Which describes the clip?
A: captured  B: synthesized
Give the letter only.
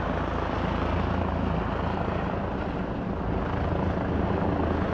A